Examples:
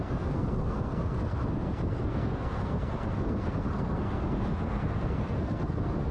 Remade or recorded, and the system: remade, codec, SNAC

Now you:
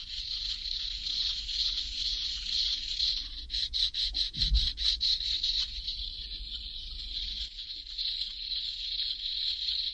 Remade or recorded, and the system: remade, vocoder, Vocos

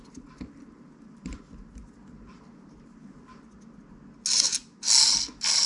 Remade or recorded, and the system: recorded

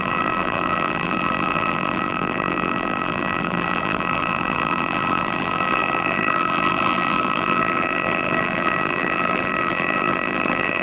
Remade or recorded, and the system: remade, vocoder, BigVGAN v2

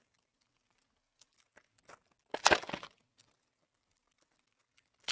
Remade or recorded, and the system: recorded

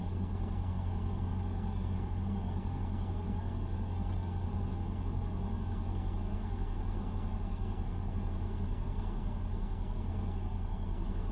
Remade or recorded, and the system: remade, codec, SNAC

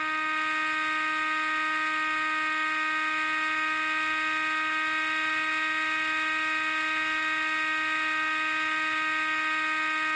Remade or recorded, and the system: recorded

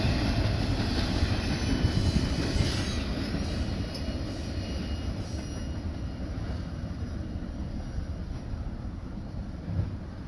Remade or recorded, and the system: recorded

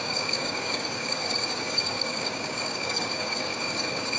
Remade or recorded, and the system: remade, codec, DAC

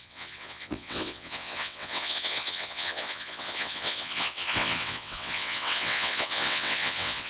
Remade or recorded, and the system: remade, vocoder, WaveNeXt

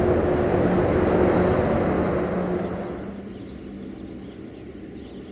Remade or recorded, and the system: recorded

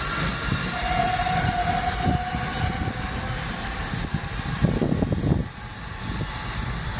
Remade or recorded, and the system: recorded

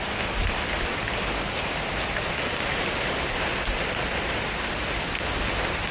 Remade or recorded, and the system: recorded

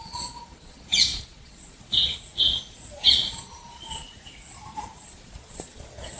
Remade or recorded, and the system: remade, vocoder, Vocos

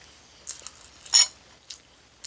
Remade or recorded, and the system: recorded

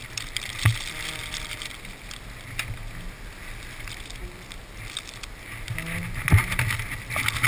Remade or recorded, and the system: recorded